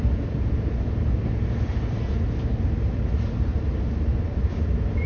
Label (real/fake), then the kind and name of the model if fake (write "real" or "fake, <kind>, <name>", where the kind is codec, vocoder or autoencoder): real